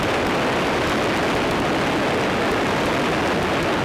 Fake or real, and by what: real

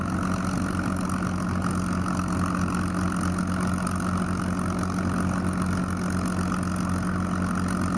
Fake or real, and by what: real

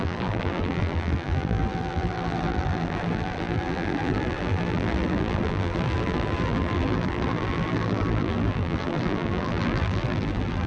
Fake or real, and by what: fake, vocoder, BigVGAN v2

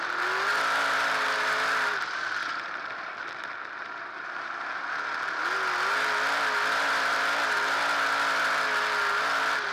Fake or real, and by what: real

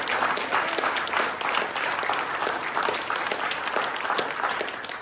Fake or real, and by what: real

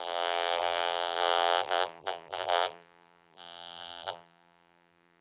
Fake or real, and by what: fake, vocoder, BigVGAN v2